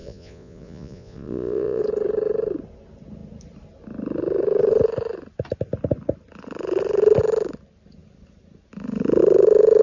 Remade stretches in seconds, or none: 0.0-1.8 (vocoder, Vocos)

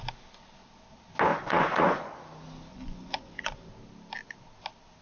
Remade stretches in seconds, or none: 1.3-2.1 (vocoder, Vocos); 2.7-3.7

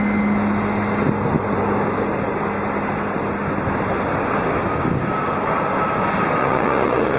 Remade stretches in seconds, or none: 6.4-7.2 (vocoder, Vocos)

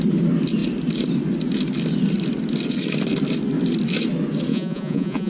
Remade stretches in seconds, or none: 4.5-5.3 (vocoder, Vocos)

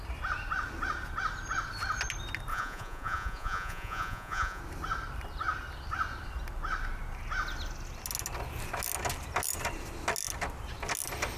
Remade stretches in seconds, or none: 2.5-4.6 (vocoder, Vocos)

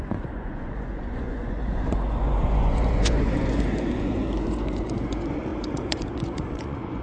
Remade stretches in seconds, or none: 0.0-7.0 (vocoder, Vocos)

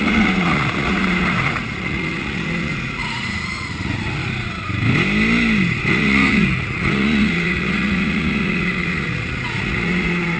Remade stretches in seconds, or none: 0.0-4.2 (vocoder, Vocos); 5.9-10.4